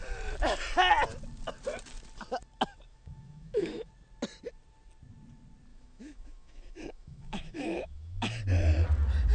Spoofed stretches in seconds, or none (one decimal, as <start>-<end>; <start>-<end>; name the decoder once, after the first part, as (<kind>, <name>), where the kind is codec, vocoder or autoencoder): 2.9-3.9 (autoencoder, DAC-VAE); 5.7-8.4